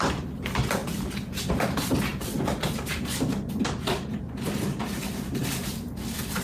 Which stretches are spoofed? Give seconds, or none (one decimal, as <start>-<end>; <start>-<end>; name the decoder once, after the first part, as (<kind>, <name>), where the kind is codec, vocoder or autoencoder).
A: 0.0-0.8 (vocoder, BigVGAN v2); 1.4-6.4